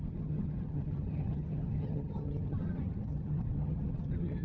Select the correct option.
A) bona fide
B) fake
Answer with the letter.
B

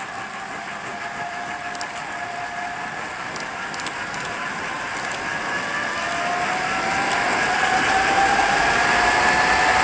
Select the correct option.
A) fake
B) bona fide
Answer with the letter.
B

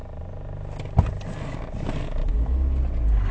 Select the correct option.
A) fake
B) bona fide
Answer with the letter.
B